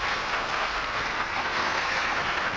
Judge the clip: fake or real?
fake